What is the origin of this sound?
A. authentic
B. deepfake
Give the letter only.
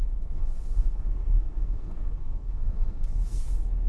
B